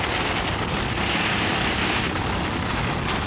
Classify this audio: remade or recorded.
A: recorded